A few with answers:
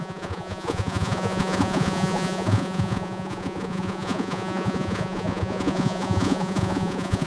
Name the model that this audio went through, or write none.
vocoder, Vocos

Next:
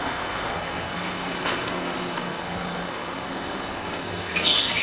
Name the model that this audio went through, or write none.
codec, SNAC